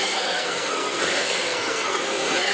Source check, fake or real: fake